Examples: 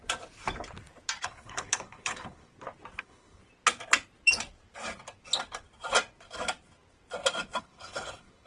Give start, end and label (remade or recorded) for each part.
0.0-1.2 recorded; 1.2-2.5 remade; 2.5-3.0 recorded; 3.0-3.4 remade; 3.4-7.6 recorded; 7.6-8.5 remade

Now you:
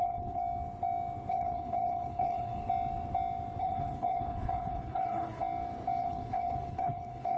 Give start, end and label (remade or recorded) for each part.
0.0-0.4 remade; 0.4-1.3 recorded; 1.3-2.6 remade; 2.6-3.6 recorded; 3.6-5.4 remade; 5.4-6.0 recorded; 6.0-7.4 remade